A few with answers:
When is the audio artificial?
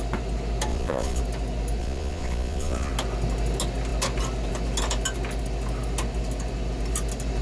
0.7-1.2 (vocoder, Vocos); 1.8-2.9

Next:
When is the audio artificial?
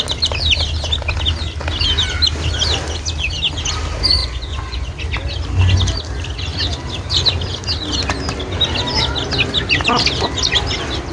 4.2-5.0 (vocoder, Vocos)